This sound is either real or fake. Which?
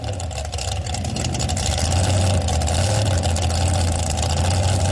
real